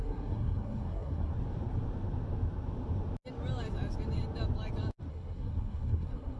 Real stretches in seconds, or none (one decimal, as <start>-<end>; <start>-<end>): 1.3-5.1